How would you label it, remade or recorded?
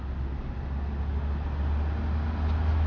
recorded